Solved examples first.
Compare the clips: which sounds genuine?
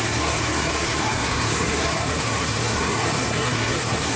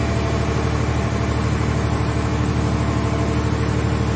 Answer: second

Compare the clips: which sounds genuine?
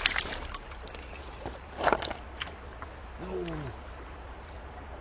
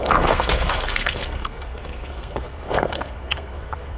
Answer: first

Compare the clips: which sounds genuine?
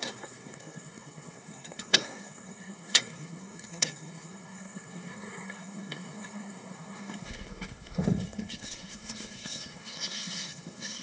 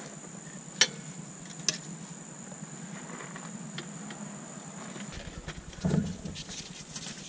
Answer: second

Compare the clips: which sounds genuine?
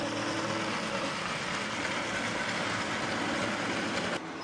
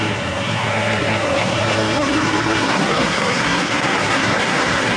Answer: first